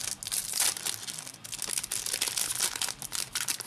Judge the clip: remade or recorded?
recorded